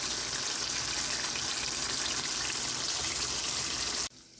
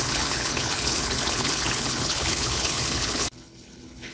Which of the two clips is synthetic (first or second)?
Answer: second